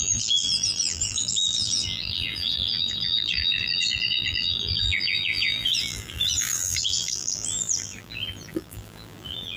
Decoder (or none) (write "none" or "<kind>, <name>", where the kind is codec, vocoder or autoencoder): vocoder, BigVGAN v2